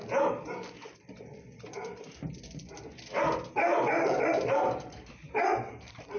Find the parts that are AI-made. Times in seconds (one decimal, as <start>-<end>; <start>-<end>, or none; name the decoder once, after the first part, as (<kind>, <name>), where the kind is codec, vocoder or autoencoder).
3.5-6.2 (vocoder, BigVGAN v2)